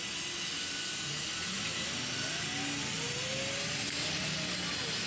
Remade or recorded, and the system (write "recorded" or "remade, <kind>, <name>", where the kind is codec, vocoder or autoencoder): recorded